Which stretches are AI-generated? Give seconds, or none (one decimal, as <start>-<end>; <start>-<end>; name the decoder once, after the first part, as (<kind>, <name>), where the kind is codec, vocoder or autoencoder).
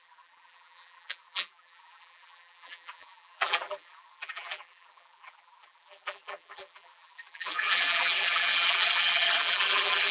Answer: 0.0-10.1 (vocoder, BigVGAN v2)